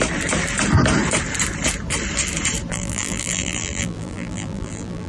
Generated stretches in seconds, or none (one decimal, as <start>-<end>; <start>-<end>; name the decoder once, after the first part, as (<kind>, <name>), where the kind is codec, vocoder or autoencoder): 2.7-5.1 (vocoder, BigVGAN v2)